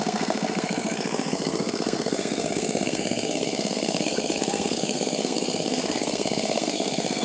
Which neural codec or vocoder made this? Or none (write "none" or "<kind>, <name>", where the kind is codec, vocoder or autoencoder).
codec, SNAC